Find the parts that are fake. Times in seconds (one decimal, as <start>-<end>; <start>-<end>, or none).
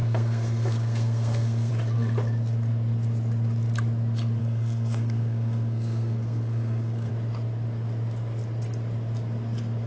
0.0-1.7; 4.4-7.1